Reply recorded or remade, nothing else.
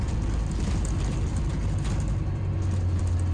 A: recorded